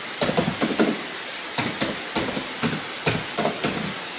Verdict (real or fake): real